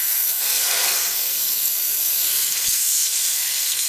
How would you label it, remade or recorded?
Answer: remade